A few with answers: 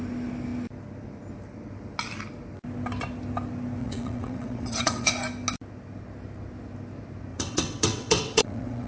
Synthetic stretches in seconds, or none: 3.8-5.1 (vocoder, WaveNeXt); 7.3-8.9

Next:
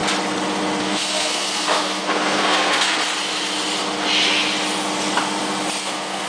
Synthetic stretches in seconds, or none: 0.8-3.0 (codec, SNAC); 5.8-6.3

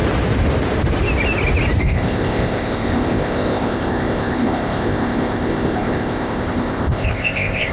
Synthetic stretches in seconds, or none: 1.8-7.7 (codec, ZipCodec)